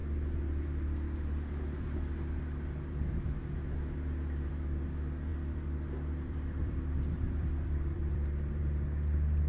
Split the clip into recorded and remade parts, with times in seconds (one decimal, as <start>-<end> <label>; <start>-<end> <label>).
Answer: 0.0-5.3 recorded; 5.3-8.6 remade; 8.6-9.5 recorded